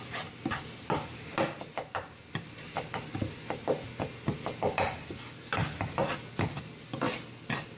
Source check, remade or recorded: recorded